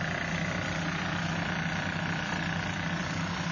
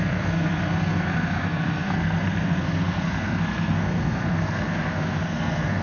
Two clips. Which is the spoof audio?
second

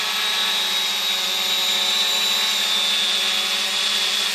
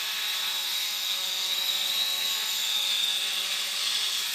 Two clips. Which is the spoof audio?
second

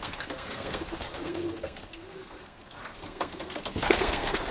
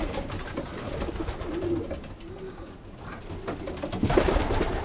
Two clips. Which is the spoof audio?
first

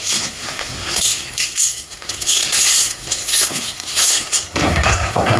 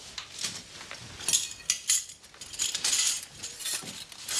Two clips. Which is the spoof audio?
first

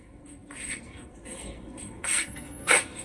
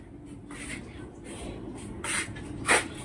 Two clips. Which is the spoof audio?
first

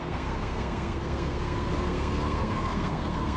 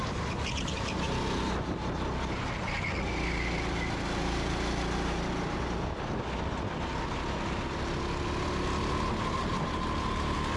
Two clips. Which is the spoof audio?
first